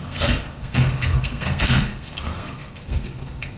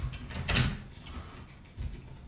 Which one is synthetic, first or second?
first